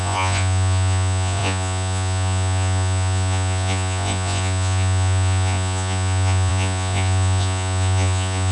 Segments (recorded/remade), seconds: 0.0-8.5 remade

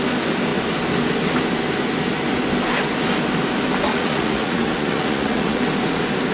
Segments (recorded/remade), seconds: 0.0-3.9 recorded; 3.9-5.6 remade; 5.6-6.3 recorded

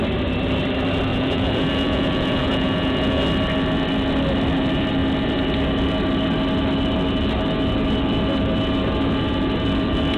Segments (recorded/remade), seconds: 0.0-1.1 recorded; 1.1-3.2 remade; 3.2-10.2 recorded

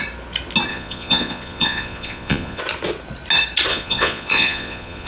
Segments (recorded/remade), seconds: 0.0-0.7 recorded; 0.7-2.6 remade; 2.6-3.7 recorded; 3.7-5.1 remade

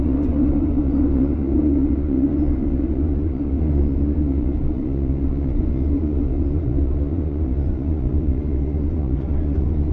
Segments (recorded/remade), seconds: 0.0-9.9 remade